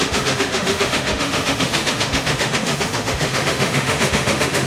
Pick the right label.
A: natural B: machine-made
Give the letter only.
B